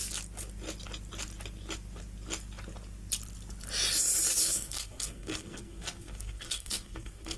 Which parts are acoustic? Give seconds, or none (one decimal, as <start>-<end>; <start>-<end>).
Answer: 0.0-4.4